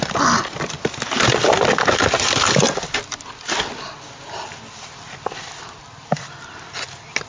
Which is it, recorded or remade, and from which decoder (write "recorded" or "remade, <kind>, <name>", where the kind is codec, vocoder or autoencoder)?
recorded